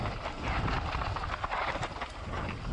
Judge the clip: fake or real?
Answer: real